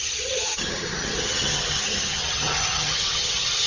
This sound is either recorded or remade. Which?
remade